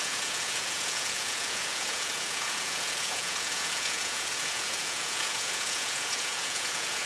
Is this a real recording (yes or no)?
no